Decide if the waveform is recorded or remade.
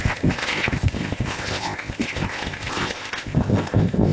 remade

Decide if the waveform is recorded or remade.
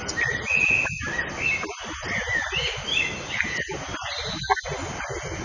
recorded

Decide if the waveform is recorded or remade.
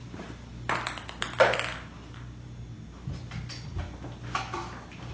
recorded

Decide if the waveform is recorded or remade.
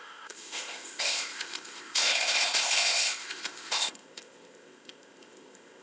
remade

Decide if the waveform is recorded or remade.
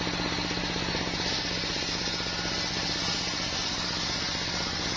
recorded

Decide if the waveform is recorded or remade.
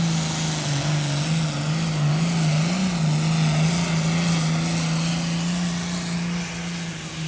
recorded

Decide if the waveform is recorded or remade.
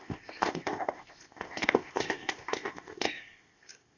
remade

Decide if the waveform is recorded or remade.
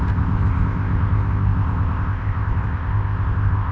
remade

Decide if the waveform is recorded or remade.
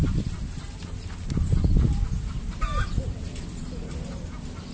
recorded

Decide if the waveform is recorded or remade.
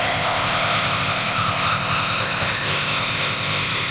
remade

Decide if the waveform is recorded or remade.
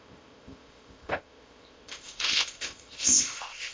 remade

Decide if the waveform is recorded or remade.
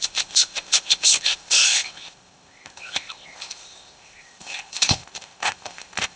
remade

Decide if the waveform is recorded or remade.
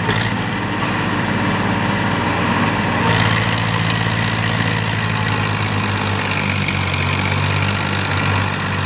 recorded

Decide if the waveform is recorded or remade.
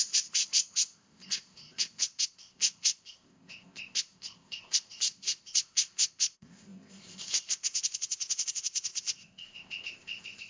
remade